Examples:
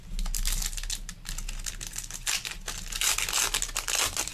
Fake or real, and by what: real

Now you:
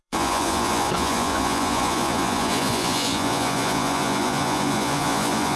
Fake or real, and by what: fake, vocoder, Vocos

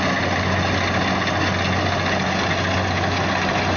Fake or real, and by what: real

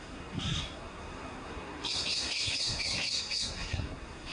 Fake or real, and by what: fake, codec, SNAC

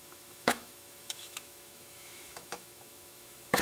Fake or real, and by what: fake, autoencoder, DAC-VAE